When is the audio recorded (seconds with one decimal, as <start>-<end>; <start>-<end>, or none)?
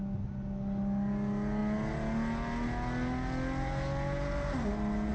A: 0.0-5.1